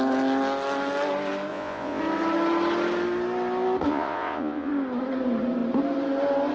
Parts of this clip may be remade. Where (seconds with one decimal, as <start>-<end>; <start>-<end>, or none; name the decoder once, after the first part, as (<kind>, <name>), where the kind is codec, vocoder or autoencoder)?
1.5-2.0 (vocoder, Vocos); 3.9-4.7